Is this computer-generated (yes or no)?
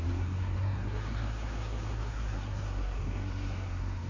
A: yes